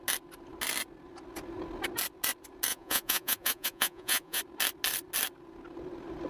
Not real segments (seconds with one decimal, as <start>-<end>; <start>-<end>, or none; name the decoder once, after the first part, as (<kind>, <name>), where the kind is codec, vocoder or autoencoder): 2.7-4.4 (vocoder, Vocos)